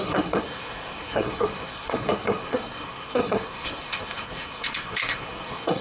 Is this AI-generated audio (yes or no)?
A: yes